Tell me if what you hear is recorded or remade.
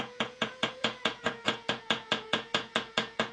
remade